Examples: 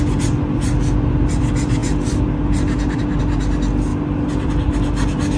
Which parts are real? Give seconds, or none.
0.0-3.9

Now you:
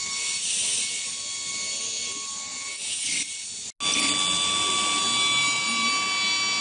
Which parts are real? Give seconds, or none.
0.0-2.5; 3.1-6.6

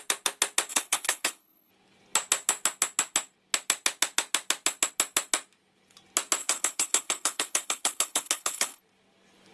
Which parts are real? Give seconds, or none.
0.0-0.7; 1.7-6.4; 8.8-9.5

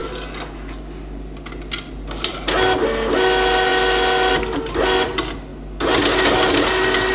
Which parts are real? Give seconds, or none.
0.0-7.1

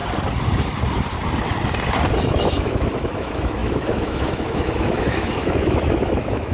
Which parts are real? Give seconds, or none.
0.0-2.2

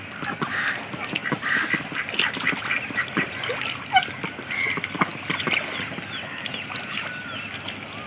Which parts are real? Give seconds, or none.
1.2-2.6

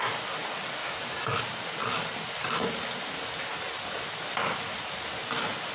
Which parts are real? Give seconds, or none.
0.0-0.8; 1.4-5.7